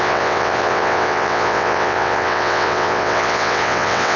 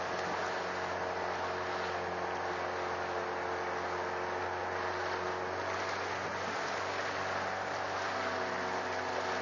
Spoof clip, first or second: first